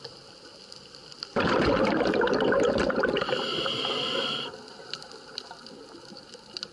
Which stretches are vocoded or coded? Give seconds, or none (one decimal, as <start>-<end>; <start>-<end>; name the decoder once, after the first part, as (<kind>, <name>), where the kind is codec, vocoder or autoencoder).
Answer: none